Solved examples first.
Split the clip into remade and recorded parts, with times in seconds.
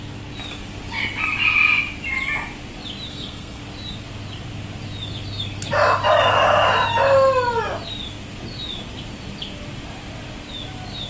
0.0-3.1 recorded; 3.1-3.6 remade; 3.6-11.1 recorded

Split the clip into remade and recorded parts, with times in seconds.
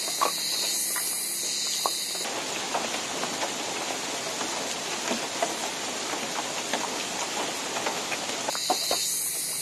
0.0-9.6 recorded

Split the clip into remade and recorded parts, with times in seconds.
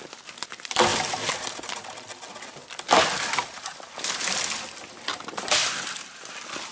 0.0-6.7 recorded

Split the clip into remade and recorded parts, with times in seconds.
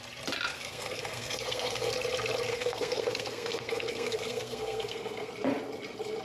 0.0-0.5 recorded; 0.5-1.9 remade; 1.9-2.5 recorded; 2.5-5.3 remade; 5.3-6.2 recorded